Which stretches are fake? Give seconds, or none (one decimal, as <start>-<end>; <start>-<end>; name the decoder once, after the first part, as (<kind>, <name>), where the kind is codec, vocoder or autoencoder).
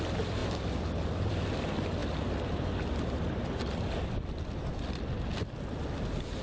none